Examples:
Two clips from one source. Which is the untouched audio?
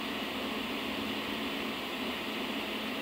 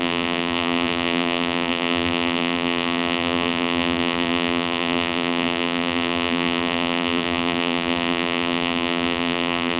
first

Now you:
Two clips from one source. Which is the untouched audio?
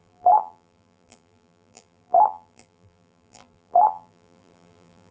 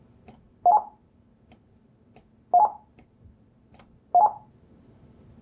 second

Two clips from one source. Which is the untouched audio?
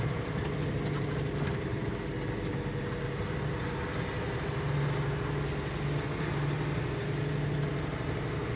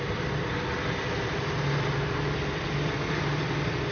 first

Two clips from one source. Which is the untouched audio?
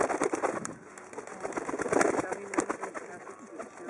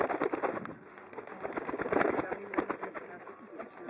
first